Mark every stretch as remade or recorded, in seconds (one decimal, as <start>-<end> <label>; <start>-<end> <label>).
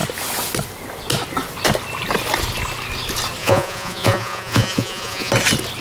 0.0-3.4 recorded; 3.4-5.3 remade; 5.3-5.8 recorded